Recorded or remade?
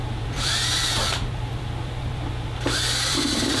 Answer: remade